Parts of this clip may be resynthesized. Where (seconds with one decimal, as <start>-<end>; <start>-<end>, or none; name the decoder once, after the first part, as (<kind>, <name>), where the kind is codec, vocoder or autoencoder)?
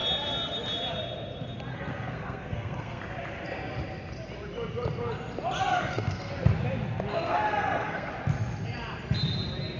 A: 1.7-3.0 (codec, SNAC); 5.7-6.3; 7.1-8.1